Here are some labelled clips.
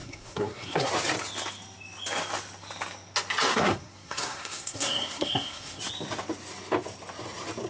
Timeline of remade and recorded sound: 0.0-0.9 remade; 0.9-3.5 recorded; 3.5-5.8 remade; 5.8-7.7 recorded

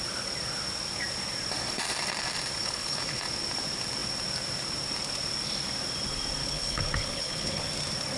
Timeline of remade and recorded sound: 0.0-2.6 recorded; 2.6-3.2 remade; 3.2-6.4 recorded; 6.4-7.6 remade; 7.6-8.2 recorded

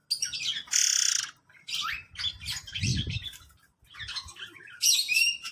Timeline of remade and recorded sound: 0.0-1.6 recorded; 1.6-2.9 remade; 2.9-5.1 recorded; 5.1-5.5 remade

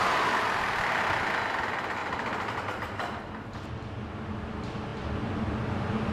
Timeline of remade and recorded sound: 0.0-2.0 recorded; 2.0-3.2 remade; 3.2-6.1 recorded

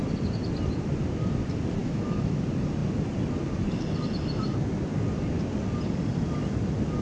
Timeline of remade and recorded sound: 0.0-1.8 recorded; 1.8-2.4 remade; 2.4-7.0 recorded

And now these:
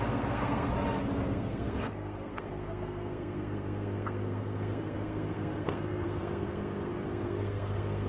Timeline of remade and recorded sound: 0.0-0.7 remade; 0.7-1.3 recorded; 1.3-8.1 remade

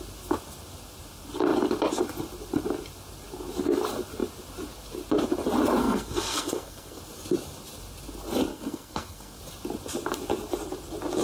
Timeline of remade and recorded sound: 0.0-5.8 recorded; 5.8-7.0 remade; 7.0-8.5 recorded; 8.5-9.4 remade; 9.4-11.2 recorded